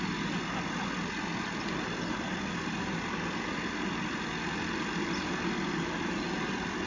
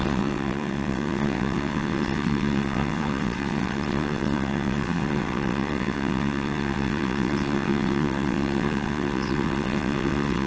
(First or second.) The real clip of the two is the first